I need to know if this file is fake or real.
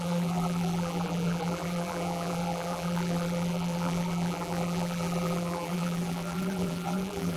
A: fake